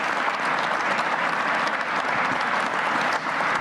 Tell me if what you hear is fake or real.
real